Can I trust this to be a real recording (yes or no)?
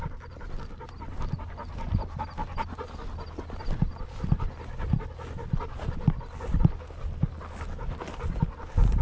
yes